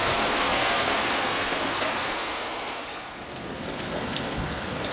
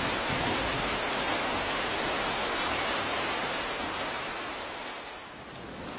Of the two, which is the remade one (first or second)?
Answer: first